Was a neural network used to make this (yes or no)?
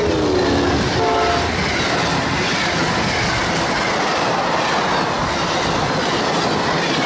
no